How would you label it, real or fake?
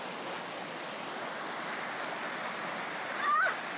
real